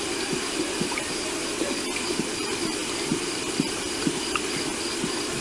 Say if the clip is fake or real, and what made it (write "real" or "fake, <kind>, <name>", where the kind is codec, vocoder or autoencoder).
real